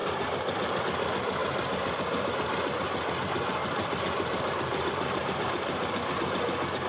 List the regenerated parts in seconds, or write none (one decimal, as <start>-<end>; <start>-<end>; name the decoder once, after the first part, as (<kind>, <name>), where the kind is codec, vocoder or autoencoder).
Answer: 0.0-0.8 (vocoder, BigVGAN v2); 1.4-2.3; 3.6-6.2